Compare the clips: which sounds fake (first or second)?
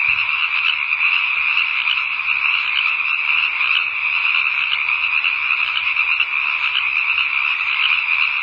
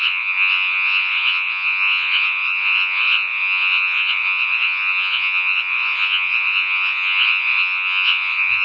second